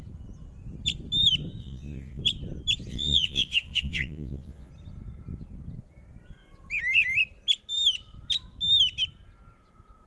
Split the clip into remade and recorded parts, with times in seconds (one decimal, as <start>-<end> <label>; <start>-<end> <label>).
0.0-1.6 recorded; 1.6-2.2 remade; 2.2-2.9 recorded; 2.9-4.7 remade; 4.7-10.1 recorded